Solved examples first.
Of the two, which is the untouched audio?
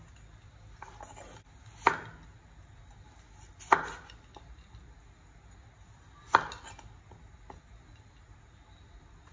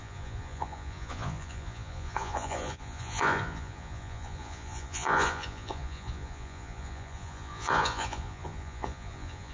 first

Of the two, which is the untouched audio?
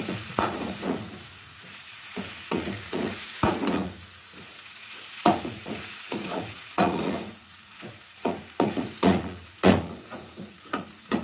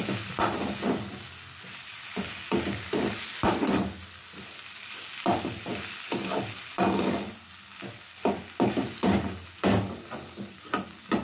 second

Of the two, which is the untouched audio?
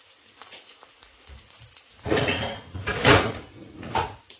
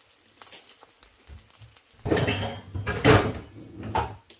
second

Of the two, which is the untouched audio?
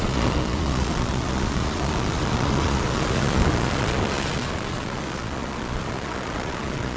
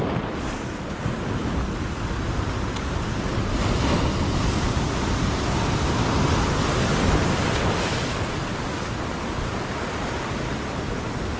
second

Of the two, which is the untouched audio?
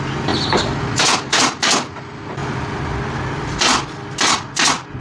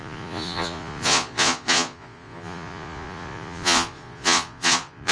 first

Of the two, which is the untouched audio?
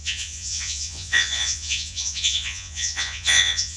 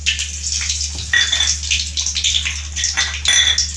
second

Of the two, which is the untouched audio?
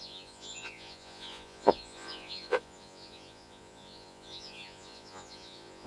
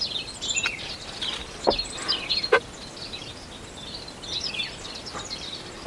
second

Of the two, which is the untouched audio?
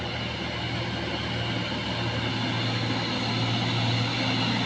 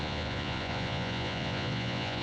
first